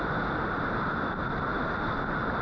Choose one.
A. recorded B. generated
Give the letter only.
A